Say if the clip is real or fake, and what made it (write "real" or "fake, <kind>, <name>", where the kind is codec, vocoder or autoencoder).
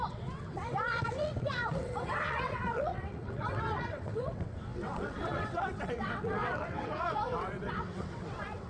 fake, vocoder, WaveNeXt